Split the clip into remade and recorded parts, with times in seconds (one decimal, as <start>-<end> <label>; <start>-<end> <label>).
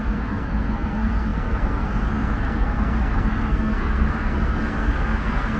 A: 0.0-5.6 remade